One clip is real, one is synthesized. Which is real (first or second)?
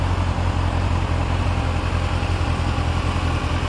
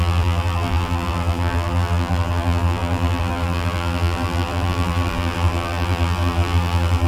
first